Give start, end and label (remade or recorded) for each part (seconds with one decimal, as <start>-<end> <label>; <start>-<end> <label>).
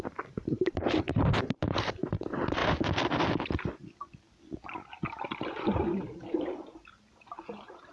0.0-2.6 remade; 2.6-5.2 recorded; 5.2-7.9 remade